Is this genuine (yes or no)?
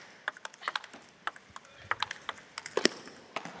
yes